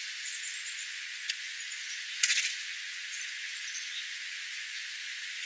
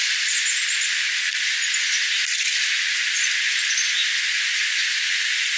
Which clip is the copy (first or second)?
first